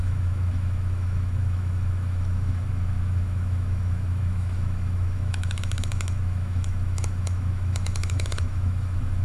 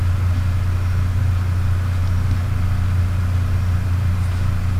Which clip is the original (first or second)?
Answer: second